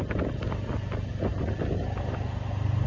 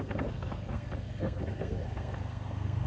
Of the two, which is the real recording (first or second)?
first